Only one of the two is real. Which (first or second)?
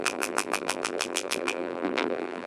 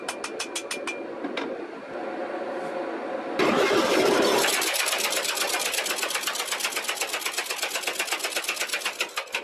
second